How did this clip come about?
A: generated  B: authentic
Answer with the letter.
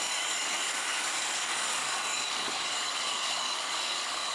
A